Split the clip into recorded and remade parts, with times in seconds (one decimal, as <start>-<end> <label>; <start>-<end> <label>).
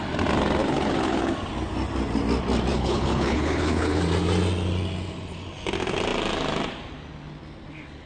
0.0-0.6 recorded; 0.6-1.3 remade; 1.3-2.7 recorded; 2.7-4.0 remade; 4.0-8.1 recorded